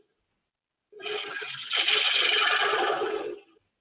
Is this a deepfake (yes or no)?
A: no